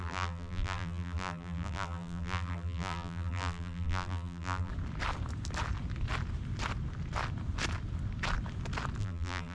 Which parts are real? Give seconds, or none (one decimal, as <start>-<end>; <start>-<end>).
4.7-9.0